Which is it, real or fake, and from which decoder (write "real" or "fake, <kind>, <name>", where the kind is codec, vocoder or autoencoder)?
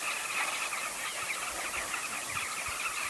real